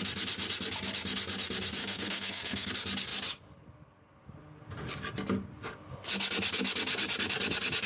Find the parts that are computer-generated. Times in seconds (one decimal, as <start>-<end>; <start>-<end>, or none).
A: 1.8-2.7